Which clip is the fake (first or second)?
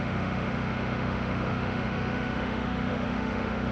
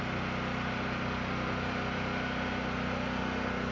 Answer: first